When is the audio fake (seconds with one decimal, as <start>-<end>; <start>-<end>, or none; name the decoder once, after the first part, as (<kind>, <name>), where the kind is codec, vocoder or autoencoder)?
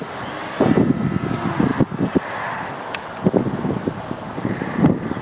none